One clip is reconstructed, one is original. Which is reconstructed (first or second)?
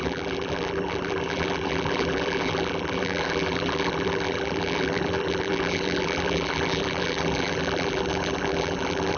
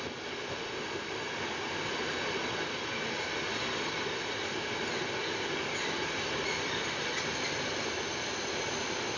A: first